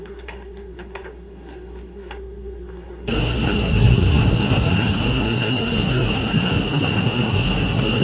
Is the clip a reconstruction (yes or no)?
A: yes